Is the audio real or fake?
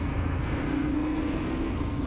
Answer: fake